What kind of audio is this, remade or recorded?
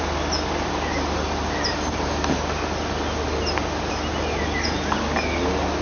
recorded